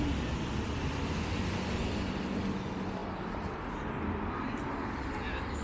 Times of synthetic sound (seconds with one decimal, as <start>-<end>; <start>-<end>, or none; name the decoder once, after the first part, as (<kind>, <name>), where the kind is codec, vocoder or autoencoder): none